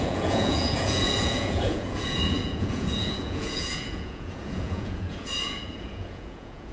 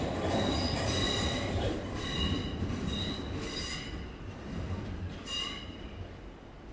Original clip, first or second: second